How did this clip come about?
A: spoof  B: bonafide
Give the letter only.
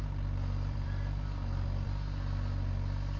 A